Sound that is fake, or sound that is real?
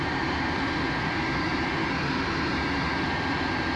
real